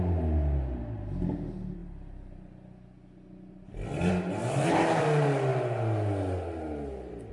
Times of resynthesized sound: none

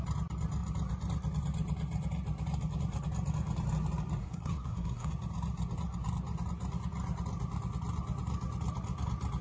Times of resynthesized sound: 4.2-5.1 (codec, SNAC)

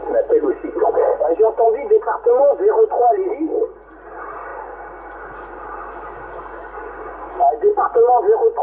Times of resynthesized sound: none